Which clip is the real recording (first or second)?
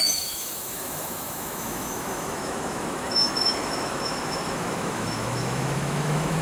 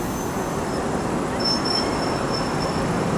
second